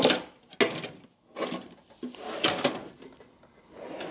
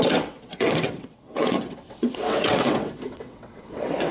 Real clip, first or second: first